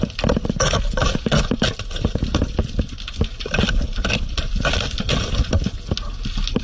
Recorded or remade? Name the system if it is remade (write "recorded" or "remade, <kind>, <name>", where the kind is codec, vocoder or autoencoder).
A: recorded